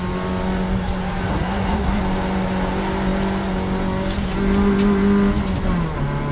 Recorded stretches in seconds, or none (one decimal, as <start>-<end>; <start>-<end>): 0.0-1.3; 2.0-6.3